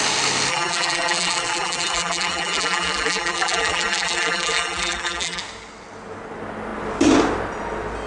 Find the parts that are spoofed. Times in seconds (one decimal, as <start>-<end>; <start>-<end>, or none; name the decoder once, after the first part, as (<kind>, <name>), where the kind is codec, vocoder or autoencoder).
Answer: 0.5-5.4 (vocoder, BigVGAN v2)